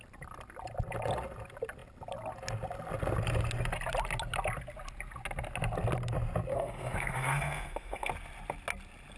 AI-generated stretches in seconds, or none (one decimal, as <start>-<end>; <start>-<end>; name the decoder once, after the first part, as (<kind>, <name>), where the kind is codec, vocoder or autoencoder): 6.5-8.1 (codec, SNAC)